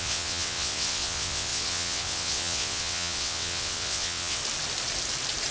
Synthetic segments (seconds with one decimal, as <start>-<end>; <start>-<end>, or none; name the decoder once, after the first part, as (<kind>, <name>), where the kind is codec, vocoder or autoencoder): 0.0-4.4 (vocoder, WaveNeXt)